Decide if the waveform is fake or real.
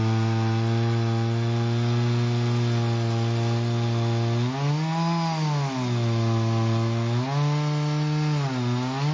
real